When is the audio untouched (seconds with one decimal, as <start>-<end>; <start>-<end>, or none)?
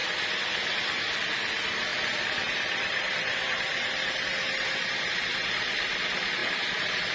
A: 0.0-1.9; 4.9-6.4